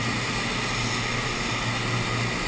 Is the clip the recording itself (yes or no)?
yes